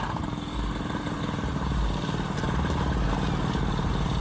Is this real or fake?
real